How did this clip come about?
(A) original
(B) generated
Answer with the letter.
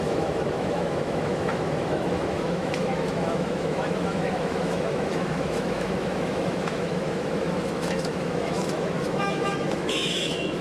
B